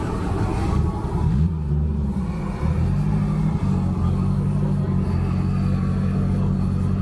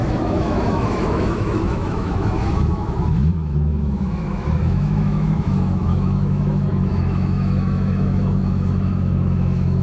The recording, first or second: first